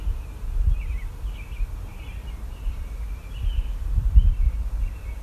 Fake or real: real